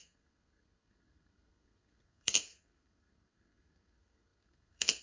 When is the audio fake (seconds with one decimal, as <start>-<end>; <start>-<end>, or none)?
0.0-5.0